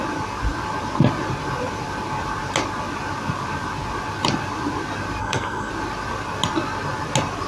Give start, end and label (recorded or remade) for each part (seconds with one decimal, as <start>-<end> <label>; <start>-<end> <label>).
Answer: 0.0-5.2 recorded; 5.2-5.7 remade; 5.7-7.5 recorded